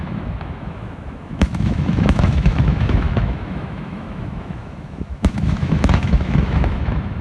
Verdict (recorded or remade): remade